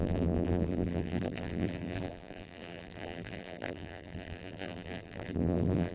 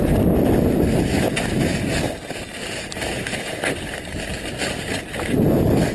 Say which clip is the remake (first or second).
first